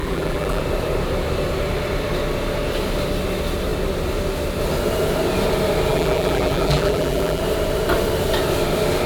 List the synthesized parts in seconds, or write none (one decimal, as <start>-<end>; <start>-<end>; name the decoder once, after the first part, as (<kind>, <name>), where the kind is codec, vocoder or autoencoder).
0.0-0.6 (vocoder, BigVGAN v2); 5.9-7.4